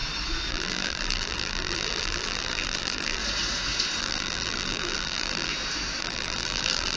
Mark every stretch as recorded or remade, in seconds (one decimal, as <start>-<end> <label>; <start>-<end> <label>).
0.0-0.5 recorded; 0.5-3.2 remade; 3.2-4.0 recorded; 4.0-5.5 remade; 5.5-6.0 recorded; 6.0-7.0 remade